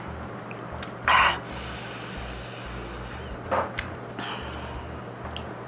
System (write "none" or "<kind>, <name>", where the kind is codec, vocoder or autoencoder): none